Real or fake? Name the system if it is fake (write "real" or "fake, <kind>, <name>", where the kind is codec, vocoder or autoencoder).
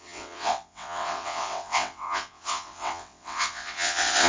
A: fake, vocoder, WaveNeXt